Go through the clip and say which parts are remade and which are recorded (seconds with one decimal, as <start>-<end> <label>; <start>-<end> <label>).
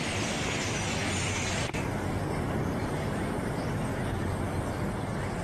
0.0-2.8 recorded; 2.8-3.3 remade; 3.3-5.4 recorded